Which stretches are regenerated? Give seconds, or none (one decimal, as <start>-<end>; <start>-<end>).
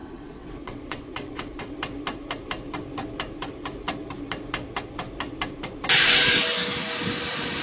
0.0-1.6